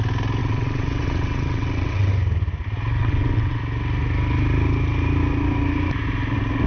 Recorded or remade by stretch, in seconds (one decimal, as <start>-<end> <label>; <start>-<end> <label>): 0.0-0.4 recorded; 0.4-2.1 remade; 2.1-3.0 recorded; 3.0-3.6 remade; 3.6-6.7 recorded